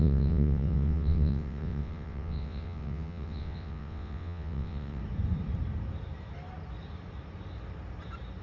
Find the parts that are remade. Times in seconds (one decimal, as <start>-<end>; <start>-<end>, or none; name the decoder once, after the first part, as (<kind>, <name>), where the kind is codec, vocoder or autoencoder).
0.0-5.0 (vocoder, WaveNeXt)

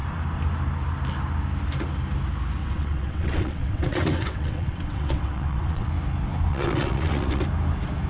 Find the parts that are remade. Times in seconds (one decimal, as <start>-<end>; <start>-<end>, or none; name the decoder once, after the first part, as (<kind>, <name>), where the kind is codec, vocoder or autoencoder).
2.6-5.9 (vocoder, WaveNeXt); 6.5-7.4

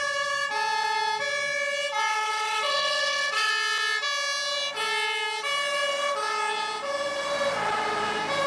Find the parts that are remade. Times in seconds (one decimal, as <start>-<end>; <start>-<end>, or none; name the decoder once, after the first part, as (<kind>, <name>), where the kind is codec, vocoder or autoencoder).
2.1-3.5 (vocoder, WaveNeXt)

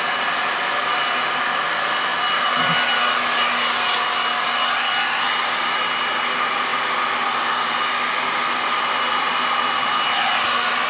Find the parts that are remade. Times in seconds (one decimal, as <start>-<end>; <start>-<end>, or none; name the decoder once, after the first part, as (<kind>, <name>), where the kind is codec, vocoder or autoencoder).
none

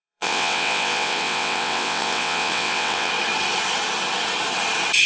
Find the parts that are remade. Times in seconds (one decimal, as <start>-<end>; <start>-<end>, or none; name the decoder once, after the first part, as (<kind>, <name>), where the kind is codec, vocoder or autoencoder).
0.0-3.1 (vocoder, WaveNeXt)

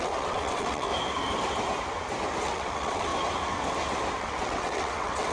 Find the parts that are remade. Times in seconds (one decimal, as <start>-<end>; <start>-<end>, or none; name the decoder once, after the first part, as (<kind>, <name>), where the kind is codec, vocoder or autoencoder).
0.0-0.9 (vocoder, WaveNeXt); 2.4-3.1; 4.2-5.3

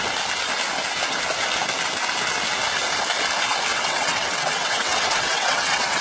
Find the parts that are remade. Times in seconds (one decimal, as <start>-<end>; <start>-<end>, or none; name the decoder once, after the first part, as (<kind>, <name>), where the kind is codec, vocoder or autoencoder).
3.7-6.0 (vocoder, WaveNeXt)

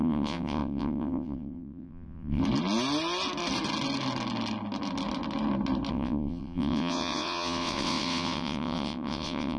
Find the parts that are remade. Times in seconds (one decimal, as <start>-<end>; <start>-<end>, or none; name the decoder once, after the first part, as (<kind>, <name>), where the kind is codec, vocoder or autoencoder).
0.0-2.4 (vocoder, WaveNeXt); 5.9-9.6